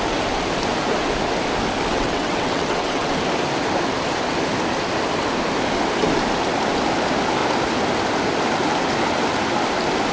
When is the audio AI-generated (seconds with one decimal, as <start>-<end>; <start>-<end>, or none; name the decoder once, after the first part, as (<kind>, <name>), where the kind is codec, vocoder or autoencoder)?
1.9-3.1 (vocoder, WaveNeXt)